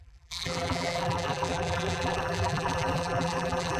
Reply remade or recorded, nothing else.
remade